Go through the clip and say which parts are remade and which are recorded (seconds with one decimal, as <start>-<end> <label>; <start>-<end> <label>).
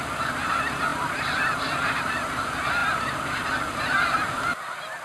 0.0-0.9 recorded; 0.9-2.1 remade; 2.1-2.8 recorded; 2.8-3.8 remade; 3.8-5.0 recorded